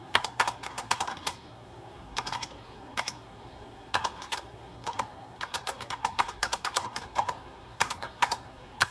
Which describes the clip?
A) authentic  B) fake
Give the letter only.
B